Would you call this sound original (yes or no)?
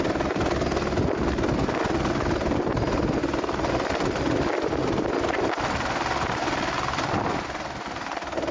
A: yes